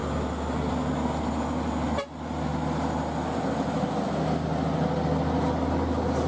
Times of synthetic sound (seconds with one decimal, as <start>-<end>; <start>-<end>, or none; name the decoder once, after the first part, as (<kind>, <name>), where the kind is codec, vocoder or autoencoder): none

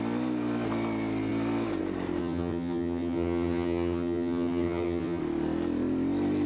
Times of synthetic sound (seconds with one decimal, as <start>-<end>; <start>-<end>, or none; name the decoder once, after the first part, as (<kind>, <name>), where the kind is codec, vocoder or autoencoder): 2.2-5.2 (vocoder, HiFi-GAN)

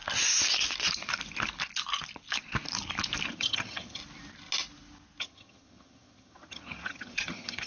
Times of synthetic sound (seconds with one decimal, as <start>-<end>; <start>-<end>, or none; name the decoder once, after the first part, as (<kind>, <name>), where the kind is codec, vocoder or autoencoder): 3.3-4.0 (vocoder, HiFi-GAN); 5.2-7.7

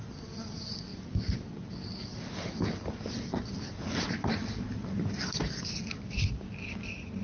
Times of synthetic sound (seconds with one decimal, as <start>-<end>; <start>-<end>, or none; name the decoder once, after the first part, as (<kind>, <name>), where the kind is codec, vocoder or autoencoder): none

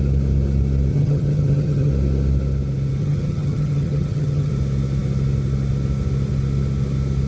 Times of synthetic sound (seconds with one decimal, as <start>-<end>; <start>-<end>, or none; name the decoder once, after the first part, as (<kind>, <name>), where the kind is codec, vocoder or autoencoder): 0.9-1.9 (vocoder, HiFi-GAN); 3.0-4.5